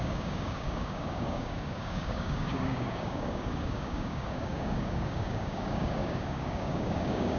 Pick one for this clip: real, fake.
fake